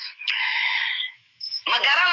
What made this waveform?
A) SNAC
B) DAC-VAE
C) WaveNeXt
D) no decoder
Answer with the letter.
B